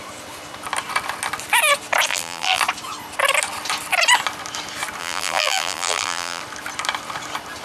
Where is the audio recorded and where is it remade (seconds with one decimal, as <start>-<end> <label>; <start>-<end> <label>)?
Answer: 0.0-2.1 recorded; 2.1-2.6 remade; 2.6-5.0 recorded; 5.0-6.4 remade; 6.4-7.6 recorded